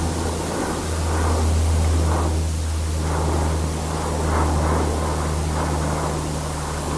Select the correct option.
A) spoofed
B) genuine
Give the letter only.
A